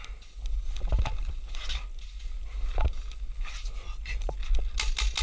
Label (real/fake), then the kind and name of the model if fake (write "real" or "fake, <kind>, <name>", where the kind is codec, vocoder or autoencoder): real